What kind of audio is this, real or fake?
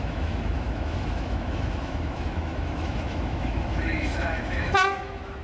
fake